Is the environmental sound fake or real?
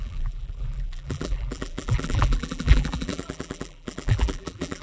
fake